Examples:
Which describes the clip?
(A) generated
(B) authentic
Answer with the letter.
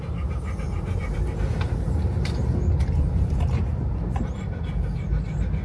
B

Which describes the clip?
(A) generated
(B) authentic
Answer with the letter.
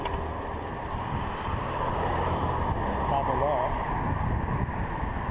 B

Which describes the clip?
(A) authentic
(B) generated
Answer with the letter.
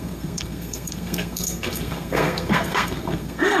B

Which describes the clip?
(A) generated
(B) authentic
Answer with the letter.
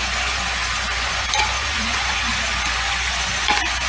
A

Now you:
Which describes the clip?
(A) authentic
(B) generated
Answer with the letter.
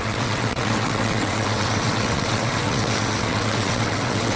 B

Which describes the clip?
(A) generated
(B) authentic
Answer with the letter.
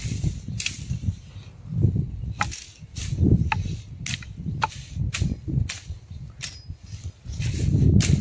B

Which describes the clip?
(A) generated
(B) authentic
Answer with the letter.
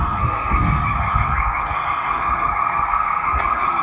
A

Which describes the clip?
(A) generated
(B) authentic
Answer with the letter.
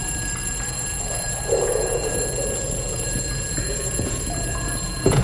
A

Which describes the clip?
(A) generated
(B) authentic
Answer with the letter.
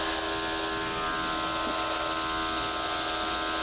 B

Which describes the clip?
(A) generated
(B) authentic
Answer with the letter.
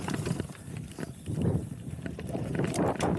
B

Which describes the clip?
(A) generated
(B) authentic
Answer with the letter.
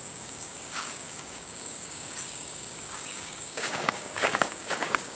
A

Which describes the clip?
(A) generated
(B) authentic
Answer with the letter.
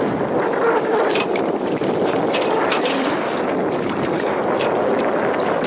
B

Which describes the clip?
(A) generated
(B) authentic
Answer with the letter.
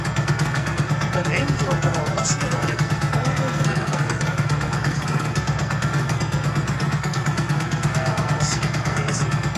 A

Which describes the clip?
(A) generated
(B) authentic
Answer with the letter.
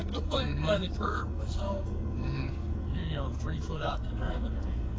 A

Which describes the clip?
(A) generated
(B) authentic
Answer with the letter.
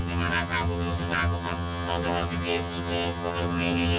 A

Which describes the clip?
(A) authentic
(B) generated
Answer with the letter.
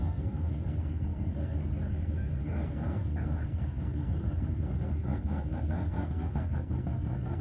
B